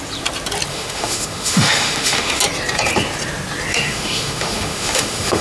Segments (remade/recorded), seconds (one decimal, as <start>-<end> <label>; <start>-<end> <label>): 0.0-0.7 recorded; 0.7-2.4 remade; 2.4-3.7 recorded; 3.7-5.4 remade